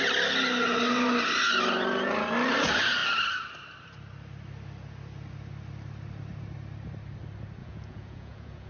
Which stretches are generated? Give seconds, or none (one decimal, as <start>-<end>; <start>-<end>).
7.6-8.7